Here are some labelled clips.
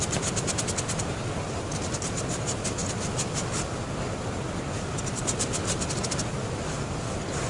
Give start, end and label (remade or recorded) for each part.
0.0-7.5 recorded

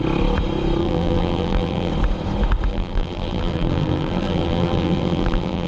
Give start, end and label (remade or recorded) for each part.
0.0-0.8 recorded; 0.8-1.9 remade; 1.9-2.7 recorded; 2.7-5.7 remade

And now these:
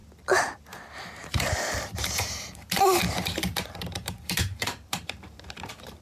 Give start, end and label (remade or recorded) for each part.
0.0-1.0 recorded; 1.0-6.0 remade

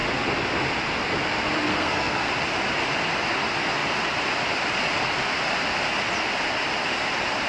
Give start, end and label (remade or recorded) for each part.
0.0-1.7 recorded; 1.7-2.3 remade; 2.3-7.5 recorded